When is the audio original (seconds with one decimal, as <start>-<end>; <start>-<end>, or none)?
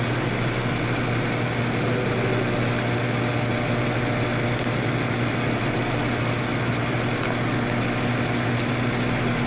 0.0-9.5